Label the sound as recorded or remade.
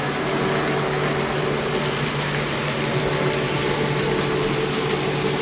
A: recorded